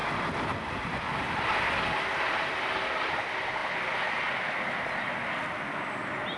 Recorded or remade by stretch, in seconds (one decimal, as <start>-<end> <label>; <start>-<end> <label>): 0.0-6.4 recorded